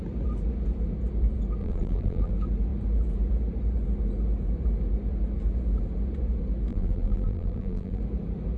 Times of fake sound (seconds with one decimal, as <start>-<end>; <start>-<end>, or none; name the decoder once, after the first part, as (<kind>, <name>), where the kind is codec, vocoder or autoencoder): 1.6-2.3 (vocoder, BigVGAN v2); 6.7-8.0